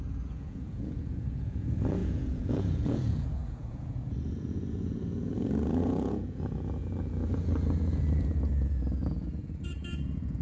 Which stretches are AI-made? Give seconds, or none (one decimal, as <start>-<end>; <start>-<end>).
0.0-10.4